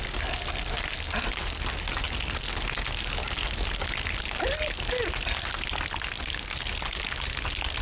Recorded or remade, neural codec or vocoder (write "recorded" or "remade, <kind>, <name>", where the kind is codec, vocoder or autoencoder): recorded